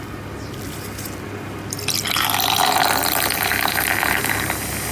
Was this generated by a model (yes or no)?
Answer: no